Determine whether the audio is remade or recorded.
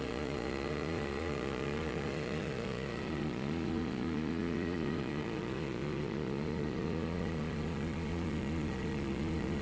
remade